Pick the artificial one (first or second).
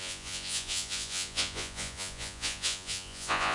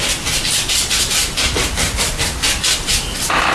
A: first